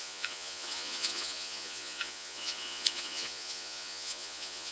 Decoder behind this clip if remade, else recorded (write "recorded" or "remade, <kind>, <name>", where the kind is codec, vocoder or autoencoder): remade, vocoder, Vocos